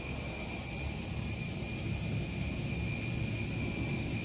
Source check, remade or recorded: recorded